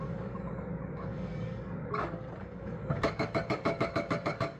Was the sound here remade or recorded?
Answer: remade